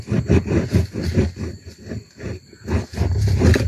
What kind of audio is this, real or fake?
real